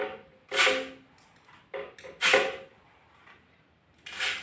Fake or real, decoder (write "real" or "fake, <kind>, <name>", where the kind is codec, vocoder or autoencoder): real